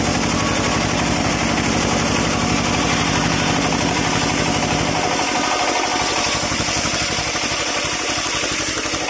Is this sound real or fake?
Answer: real